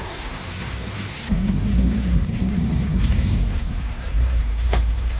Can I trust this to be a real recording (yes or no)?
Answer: no